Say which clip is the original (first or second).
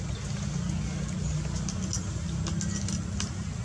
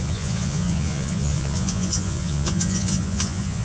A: first